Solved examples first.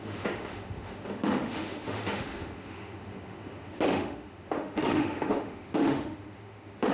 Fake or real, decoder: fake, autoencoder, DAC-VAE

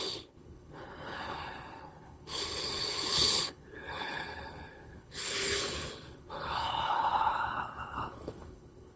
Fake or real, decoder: fake, codec, HILCodec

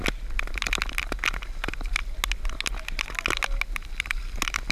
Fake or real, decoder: real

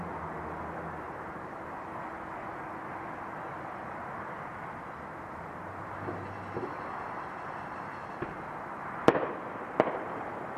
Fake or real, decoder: real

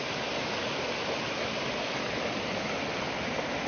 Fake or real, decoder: real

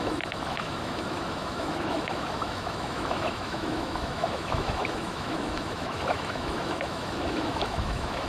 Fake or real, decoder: fake, autoencoder, DAC-VAE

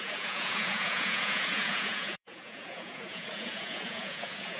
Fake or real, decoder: fake, vocoder, Vocos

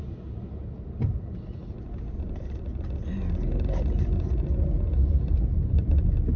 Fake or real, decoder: real